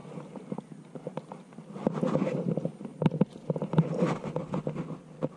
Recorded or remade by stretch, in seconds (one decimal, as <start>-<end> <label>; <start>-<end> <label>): 0.0-5.4 recorded